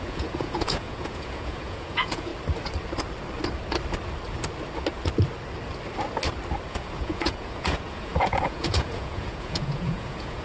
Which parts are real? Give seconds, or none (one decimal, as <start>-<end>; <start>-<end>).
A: 2.3-6.7